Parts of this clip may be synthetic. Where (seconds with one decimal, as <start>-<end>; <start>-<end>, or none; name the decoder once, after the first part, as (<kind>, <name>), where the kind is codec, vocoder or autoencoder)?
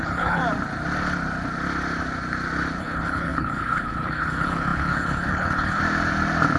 0.0-0.4 (codec, HILCodec); 2.8-5.8